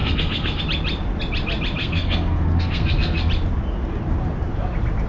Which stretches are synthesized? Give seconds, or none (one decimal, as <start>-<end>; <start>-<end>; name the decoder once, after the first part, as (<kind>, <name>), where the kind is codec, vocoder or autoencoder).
0.0-0.6 (codec, SNAC); 1.8-3.3